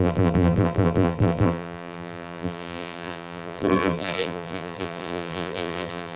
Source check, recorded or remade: remade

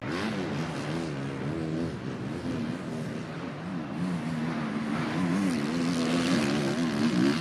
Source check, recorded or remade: recorded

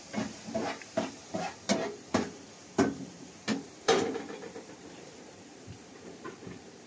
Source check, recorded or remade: remade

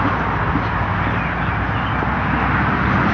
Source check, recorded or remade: recorded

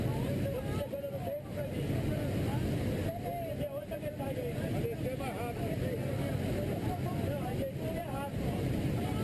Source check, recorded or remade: recorded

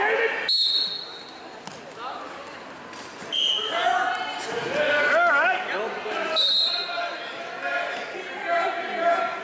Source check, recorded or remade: recorded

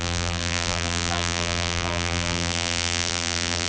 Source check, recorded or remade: remade